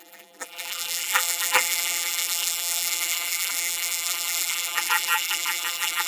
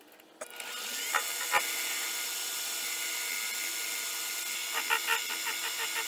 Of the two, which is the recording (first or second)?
second